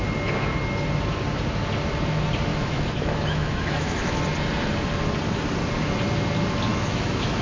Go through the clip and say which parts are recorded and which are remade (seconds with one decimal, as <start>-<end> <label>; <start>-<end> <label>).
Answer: 0.0-2.5 recorded; 2.5-4.2 remade; 4.2-6.7 recorded; 6.7-7.4 remade